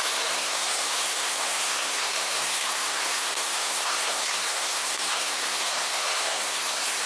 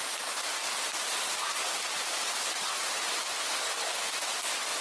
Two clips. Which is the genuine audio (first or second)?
second